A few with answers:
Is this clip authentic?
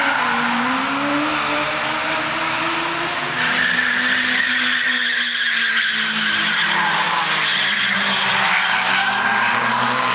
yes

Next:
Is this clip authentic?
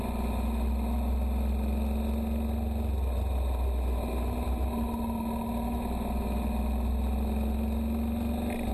yes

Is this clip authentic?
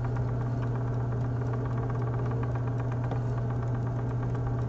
yes